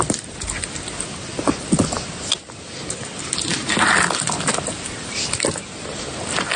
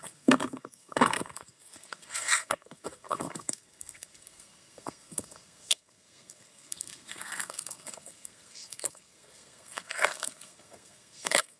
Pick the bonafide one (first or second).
first